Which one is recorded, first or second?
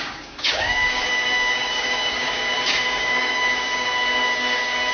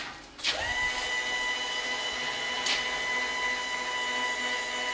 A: second